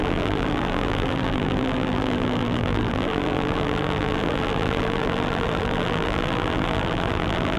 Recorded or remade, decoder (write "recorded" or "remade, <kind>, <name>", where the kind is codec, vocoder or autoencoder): remade, vocoder, BigVGAN v2